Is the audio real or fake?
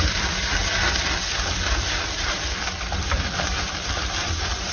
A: fake